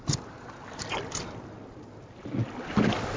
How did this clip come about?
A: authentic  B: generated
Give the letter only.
A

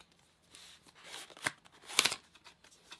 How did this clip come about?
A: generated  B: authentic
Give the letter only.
B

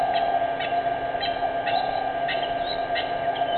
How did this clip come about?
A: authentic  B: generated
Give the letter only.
A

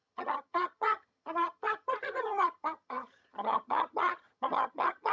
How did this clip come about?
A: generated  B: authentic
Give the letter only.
A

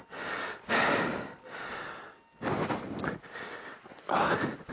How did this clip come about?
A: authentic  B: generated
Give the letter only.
A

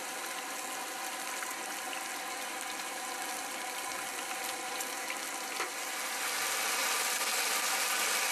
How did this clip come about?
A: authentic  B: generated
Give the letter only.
A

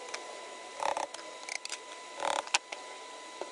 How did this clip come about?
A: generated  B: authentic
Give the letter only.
B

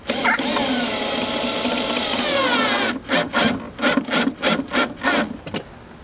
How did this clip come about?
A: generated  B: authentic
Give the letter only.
B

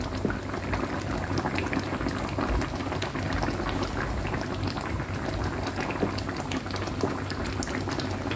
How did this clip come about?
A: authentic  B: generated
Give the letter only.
A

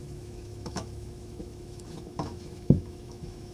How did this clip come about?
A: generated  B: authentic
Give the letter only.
A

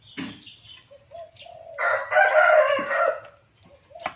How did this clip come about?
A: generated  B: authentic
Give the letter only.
B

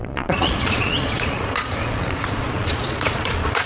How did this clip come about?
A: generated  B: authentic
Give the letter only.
A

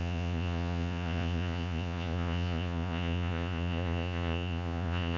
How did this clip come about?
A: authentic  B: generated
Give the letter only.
B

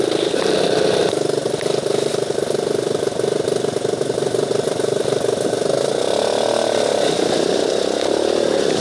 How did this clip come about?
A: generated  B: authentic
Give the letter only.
B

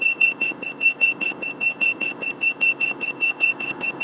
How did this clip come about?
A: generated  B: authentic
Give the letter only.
A